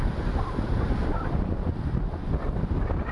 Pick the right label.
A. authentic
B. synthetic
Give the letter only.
A